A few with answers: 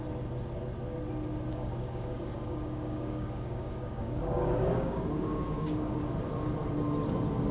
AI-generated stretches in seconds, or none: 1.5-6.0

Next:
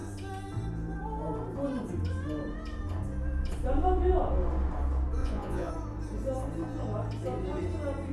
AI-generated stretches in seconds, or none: 5.2-5.7

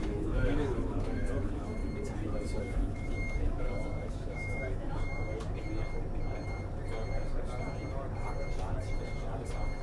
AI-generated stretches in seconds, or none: 0.0-1.8; 2.6-5.3

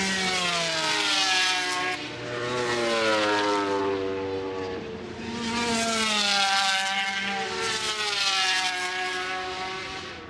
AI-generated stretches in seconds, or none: none

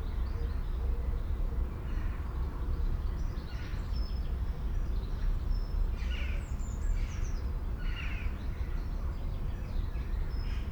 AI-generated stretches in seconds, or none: none

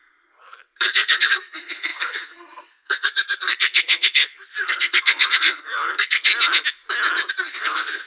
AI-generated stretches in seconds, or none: 0.0-6.3; 7.3-8.1

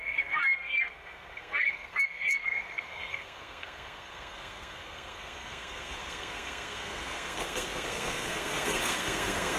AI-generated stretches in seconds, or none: 0.0-9.6

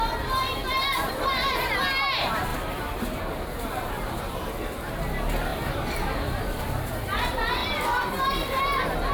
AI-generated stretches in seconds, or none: 0.6-1.5; 2.5-3.9; 5.5-6.6; 7.6-8.6